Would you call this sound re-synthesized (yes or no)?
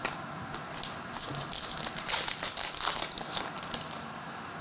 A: no